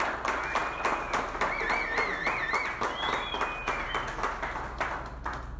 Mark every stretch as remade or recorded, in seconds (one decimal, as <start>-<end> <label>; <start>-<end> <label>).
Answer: 0.0-5.6 recorded